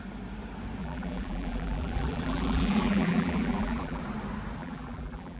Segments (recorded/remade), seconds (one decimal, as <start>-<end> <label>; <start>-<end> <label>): 0.0-0.8 recorded; 0.8-4.0 remade; 4.0-4.6 recorded; 4.6-5.4 remade